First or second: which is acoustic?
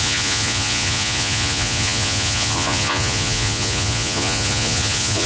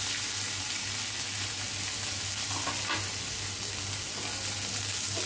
second